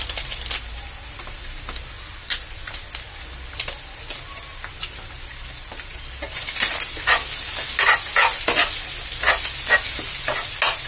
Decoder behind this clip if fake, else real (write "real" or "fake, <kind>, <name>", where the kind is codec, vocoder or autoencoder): real